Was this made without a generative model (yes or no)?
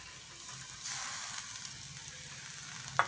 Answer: yes